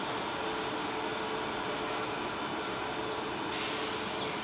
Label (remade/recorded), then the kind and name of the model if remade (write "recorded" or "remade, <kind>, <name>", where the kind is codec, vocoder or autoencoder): recorded